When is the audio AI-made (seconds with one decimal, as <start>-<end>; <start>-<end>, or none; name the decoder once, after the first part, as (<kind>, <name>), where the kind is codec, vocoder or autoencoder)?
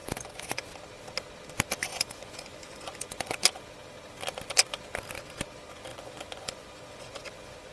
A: 0.0-0.7 (vocoder, Vocos); 1.8-3.3; 5.9-7.7